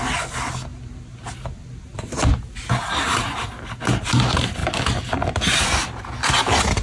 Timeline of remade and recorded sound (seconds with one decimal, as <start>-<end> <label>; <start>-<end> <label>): 0.0-6.8 recorded